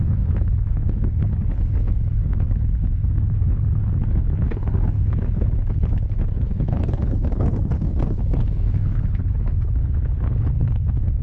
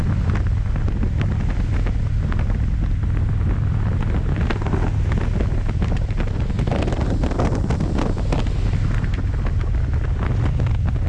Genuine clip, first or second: second